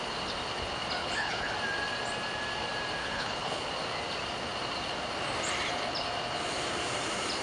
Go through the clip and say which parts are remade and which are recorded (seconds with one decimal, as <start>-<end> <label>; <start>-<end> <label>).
0.0-1.0 recorded; 1.0-1.5 remade; 1.5-3.0 recorded; 3.0-3.7 remade; 3.7-7.4 recorded